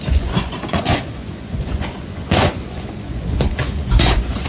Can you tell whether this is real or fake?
fake